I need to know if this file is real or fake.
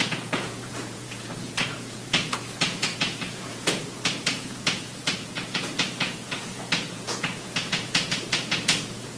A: fake